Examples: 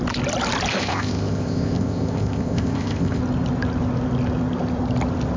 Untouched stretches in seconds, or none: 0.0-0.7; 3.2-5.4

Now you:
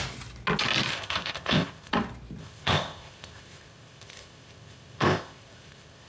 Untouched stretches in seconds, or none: 0.0-0.9; 1.9-2.4

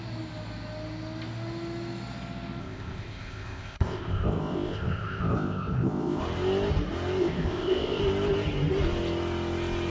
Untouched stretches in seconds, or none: 0.0-2.6; 6.2-7.2; 8.0-9.9

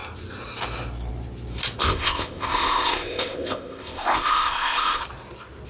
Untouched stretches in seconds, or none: 0.0-1.8; 5.0-5.7

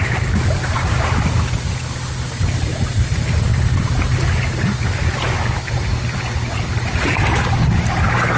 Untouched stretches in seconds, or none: 0.0-8.4

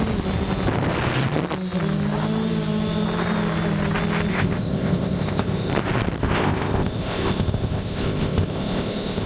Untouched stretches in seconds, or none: 0.0-4.3; 5.7-6.2